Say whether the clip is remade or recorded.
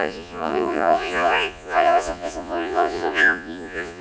remade